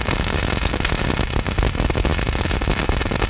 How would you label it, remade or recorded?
recorded